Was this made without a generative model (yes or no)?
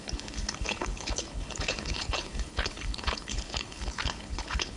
no